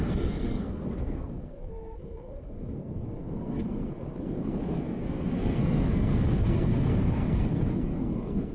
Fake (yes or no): yes